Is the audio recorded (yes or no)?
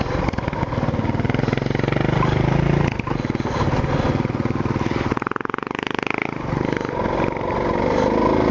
yes